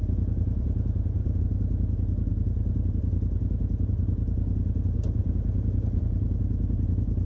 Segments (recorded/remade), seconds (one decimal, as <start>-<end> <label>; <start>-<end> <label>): 0.0-1.4 remade; 1.4-5.2 recorded; 5.2-6.0 remade; 6.0-7.2 recorded